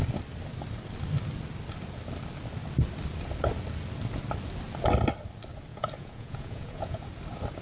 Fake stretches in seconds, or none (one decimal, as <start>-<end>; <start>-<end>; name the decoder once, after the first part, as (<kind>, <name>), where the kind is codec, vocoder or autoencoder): 5.7-7.0 (vocoder, Vocos)